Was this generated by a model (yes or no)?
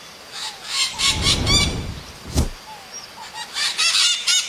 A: no